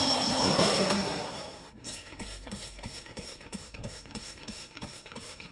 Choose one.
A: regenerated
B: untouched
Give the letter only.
A